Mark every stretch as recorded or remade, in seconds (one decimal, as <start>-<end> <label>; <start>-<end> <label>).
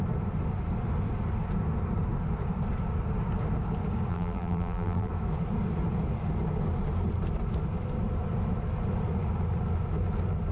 0.0-4.1 recorded; 4.1-5.1 remade; 5.1-10.5 recorded